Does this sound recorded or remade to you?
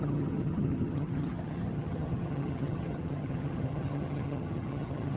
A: remade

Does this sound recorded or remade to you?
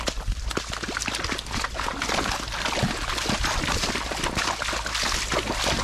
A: recorded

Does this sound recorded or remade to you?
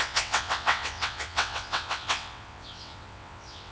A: remade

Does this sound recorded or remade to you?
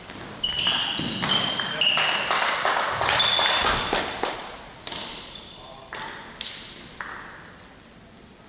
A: recorded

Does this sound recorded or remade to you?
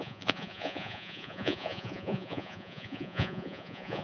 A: remade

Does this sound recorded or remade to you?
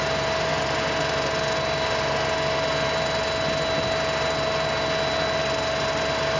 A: recorded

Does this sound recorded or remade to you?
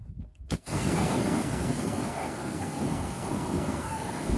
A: remade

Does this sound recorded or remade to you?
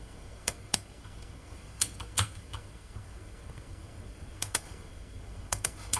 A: remade